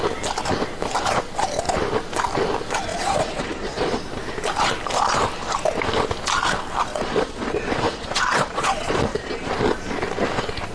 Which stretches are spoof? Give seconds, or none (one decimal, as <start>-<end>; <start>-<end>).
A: 2.9-4.0; 6.9-9.5